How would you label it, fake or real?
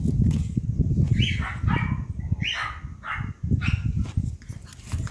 real